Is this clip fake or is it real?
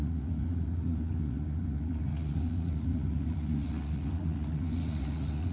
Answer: fake